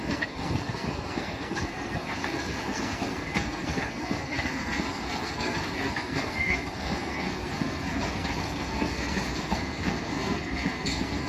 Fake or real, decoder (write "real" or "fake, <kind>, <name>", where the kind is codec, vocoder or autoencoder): fake, codec, SNAC